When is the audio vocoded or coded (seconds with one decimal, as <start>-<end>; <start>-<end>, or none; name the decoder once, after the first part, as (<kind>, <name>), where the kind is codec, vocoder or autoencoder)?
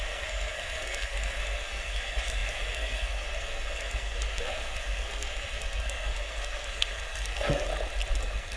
0.0-7.7 (codec, SNAC); 8.2-8.6